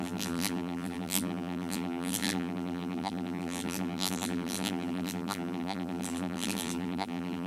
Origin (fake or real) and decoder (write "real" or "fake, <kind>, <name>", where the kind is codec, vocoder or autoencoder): fake, vocoder, BigVGAN v2